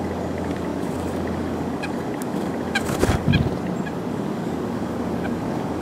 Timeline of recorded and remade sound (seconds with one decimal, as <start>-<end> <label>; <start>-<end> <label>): 0.0-3.3 remade; 3.3-4.1 recorded; 4.1-5.8 remade